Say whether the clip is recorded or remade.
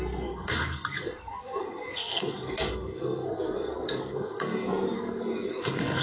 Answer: remade